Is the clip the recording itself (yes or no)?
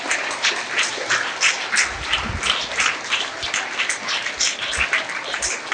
yes